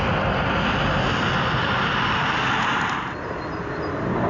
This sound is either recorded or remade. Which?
recorded